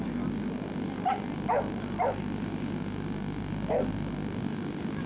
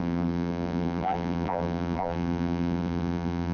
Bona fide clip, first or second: first